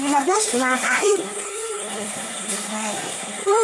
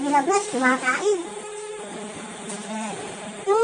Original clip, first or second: second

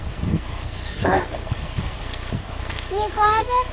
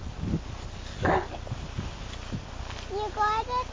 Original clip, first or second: second